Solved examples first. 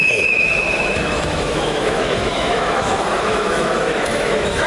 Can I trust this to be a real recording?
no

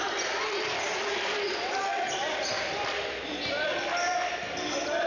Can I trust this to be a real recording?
yes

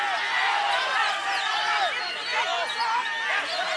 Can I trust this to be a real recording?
yes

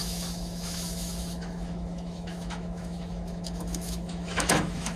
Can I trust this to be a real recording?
no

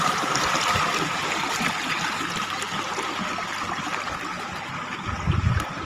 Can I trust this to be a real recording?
yes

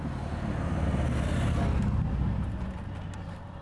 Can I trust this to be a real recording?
yes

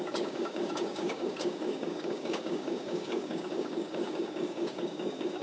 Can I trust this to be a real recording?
no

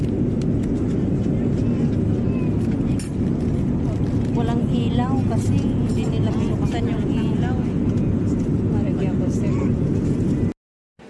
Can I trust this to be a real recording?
yes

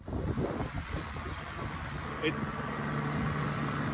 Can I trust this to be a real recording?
yes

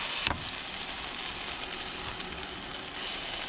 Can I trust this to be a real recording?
yes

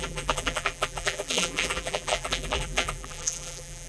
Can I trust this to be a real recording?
no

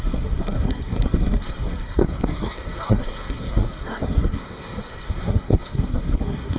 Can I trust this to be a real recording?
no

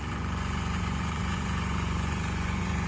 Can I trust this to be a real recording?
no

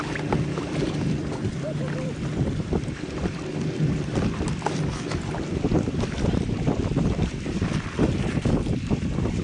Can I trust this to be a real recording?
no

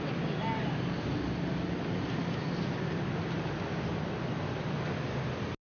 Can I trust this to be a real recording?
yes